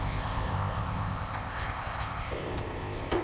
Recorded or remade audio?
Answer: remade